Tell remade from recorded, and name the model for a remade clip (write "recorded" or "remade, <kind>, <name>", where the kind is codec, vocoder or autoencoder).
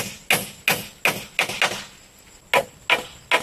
recorded